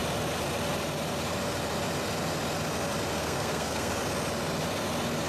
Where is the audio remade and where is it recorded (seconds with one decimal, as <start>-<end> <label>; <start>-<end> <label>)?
0.0-3.2 recorded; 3.2-3.9 remade; 3.9-5.3 recorded

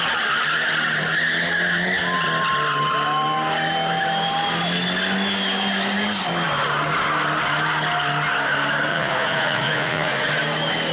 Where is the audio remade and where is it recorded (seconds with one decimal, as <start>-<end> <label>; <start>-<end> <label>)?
0.0-8.9 recorded; 8.9-10.3 remade; 10.3-10.9 recorded

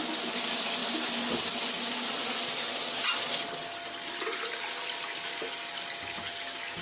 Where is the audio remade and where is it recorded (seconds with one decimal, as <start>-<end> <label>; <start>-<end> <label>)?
0.0-6.8 recorded

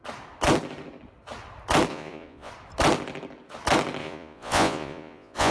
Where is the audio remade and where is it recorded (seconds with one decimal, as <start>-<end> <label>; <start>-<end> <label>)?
0.0-1.9 recorded; 1.9-2.5 remade; 2.5-4.0 recorded; 4.0-5.5 remade